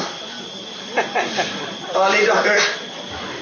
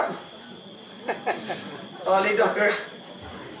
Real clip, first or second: second